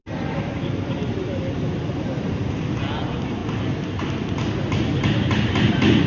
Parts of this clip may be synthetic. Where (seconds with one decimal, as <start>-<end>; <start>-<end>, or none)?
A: none

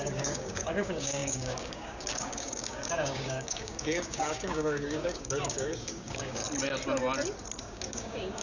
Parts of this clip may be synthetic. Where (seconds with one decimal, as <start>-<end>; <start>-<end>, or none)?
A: 0.0-6.4; 7.6-8.4